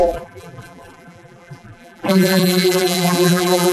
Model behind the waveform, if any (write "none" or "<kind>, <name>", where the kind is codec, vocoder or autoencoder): vocoder, BigVGAN v2